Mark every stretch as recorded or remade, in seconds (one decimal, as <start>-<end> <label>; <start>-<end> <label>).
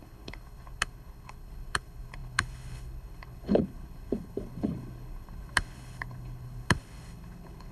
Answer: 0.0-7.7 remade